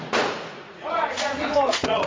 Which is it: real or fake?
fake